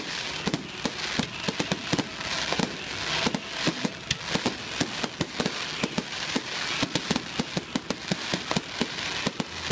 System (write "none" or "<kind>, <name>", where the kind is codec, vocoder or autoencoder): none